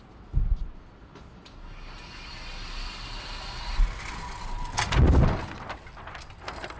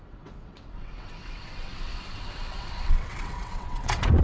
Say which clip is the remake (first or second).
second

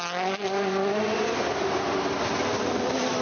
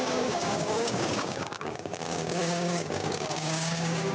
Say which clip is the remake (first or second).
second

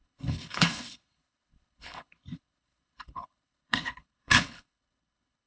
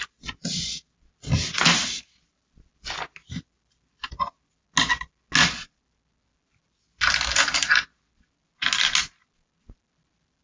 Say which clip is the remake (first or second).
first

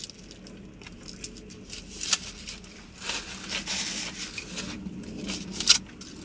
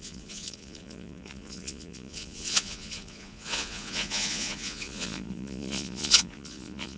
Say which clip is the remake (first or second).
second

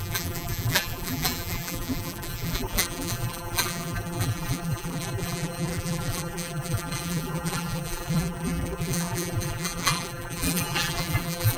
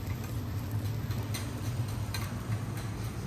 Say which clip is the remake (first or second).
first